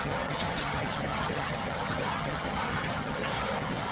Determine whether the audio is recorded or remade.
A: remade